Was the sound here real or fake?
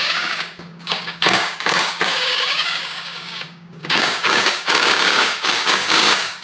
fake